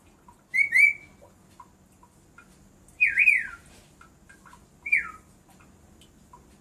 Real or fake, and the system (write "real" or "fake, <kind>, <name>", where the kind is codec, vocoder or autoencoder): real